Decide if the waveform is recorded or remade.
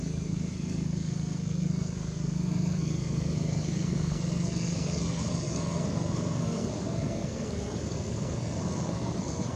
remade